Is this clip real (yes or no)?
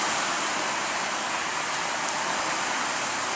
yes